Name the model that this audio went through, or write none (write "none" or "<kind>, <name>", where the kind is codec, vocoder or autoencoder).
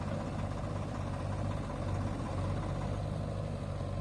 none